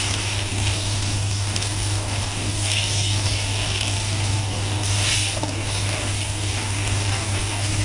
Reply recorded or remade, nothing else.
remade